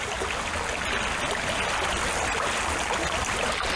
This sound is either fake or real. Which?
real